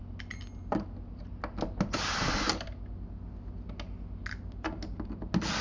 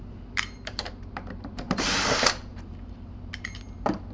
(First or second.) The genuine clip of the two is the first